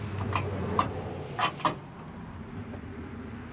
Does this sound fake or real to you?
real